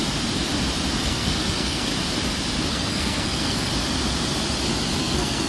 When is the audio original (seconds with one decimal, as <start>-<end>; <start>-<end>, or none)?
0.0-1.0; 1.9-2.7; 3.7-5.0